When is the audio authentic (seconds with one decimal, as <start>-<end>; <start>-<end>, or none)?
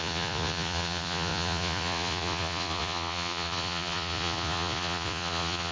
none